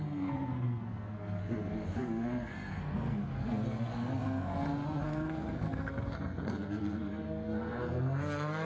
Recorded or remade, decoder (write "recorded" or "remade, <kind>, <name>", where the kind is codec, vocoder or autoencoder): remade, codec, SNAC